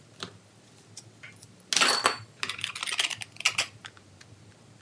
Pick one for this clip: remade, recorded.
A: recorded